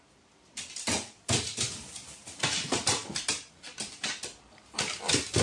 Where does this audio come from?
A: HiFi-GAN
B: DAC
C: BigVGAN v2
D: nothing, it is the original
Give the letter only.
C